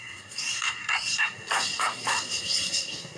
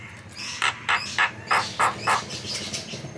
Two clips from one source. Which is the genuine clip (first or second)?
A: second